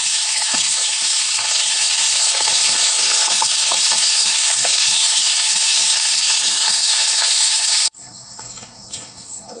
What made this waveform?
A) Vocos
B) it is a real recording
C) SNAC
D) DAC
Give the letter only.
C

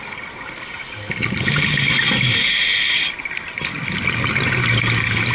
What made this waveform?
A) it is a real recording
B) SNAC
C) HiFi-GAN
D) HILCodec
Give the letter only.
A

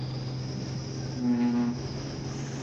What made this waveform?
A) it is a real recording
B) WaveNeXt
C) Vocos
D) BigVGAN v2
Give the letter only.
A